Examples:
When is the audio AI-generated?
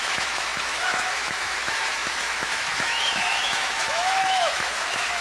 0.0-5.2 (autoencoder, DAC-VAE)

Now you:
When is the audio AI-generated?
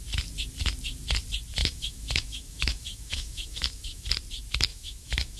1.6-4.1 (autoencoder, DAC-VAE); 4.7-5.4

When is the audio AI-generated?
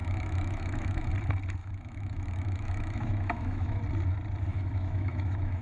0.0-1.1 (autoencoder, DAC-VAE); 1.6-3.8; 4.5-5.6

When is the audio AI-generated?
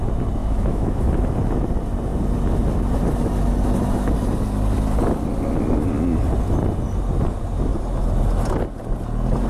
0.4-1.1 (autoencoder, DAC-VAE)